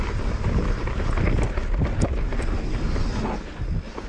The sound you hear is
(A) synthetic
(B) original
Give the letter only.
B